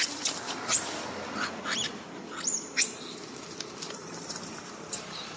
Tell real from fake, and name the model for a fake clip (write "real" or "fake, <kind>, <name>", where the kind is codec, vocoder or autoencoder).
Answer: fake, vocoder, BigVGAN v2